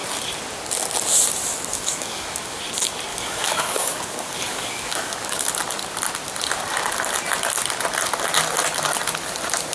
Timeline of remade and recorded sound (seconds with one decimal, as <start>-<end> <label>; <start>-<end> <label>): 0.0-1.7 recorded; 1.7-2.6 remade; 2.6-3.1 recorded; 3.1-5.5 remade; 5.5-9.7 recorded